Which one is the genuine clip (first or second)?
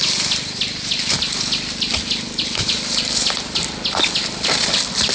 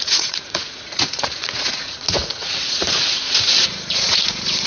first